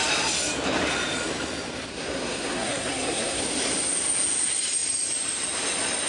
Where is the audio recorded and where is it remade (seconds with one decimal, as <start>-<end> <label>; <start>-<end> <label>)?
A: 0.0-1.9 recorded; 1.9-3.4 remade; 3.4-6.1 recorded